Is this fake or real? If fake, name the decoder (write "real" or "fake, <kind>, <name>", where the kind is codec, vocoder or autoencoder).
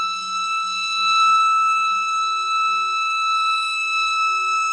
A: fake, codec, SNAC